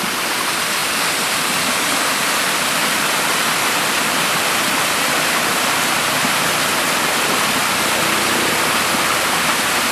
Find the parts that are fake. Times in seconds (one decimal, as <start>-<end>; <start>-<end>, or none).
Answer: 0.8-4.2; 5.5-6.4